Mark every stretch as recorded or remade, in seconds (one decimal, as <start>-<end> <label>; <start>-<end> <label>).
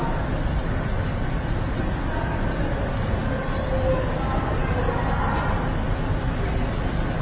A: 0.0-7.2 recorded